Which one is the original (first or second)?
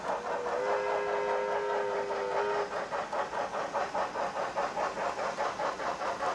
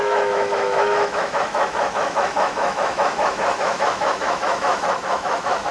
first